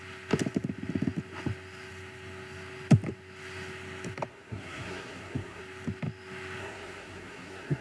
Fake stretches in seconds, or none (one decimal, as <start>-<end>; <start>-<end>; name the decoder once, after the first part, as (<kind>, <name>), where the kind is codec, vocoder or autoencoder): 4.3-5.6 (codec, SNAC); 6.6-7.8